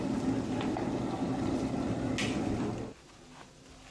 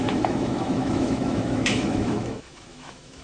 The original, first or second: first